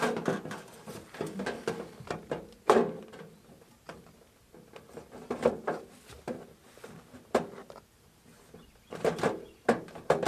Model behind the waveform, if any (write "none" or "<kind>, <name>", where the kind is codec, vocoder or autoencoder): none